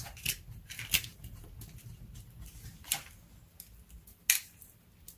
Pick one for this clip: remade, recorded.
recorded